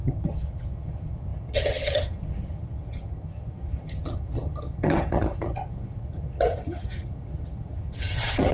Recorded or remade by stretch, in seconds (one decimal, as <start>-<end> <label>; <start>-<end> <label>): 0.0-8.5 remade